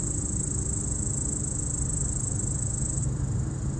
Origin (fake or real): real